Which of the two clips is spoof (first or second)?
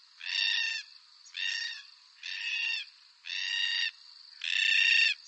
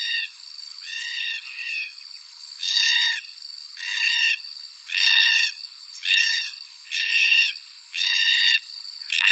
second